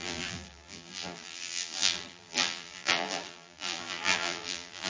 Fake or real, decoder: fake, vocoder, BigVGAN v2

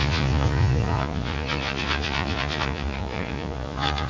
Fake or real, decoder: fake, vocoder, Vocos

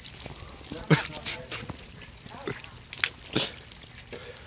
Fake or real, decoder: real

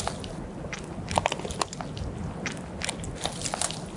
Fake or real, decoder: real